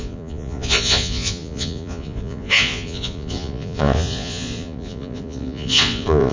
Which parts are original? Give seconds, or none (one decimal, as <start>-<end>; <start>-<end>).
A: none